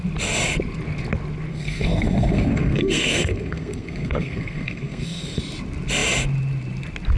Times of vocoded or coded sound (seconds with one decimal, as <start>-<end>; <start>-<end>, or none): 1.5-5.4